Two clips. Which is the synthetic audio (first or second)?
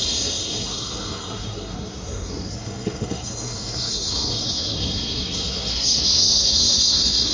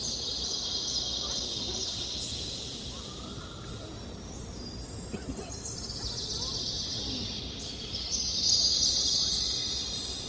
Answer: first